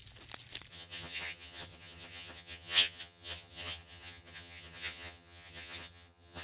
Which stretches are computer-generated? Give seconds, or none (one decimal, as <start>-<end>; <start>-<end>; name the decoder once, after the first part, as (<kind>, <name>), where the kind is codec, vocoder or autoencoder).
0.7-6.4 (vocoder, HiFi-GAN)